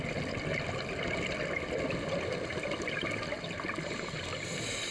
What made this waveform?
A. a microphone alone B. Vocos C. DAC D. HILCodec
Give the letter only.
A